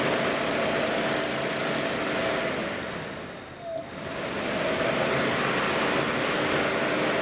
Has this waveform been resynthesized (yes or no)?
no